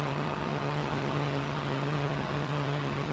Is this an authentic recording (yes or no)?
no